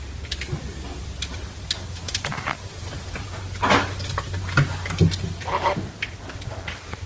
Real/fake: real